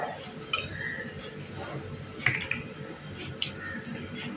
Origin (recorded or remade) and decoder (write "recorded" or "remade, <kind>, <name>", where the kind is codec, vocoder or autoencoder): recorded